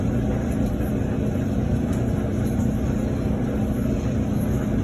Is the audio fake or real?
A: real